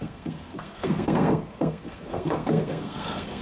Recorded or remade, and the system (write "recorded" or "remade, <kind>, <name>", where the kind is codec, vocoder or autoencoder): remade, codec, SNAC